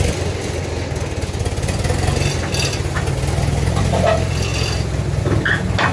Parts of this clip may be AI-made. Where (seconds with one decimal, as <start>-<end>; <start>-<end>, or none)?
none

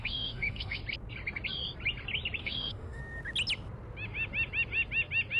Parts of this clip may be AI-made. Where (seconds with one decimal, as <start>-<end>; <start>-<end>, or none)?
0.0-0.8; 2.4-3.0